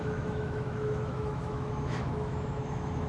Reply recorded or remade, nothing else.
remade